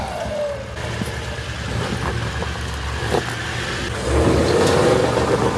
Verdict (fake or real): real